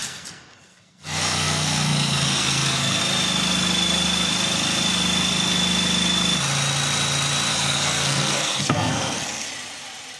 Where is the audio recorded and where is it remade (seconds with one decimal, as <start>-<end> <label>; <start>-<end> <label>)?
0.0-3.0 remade; 3.0-7.5 recorded; 7.5-9.5 remade; 9.5-10.2 recorded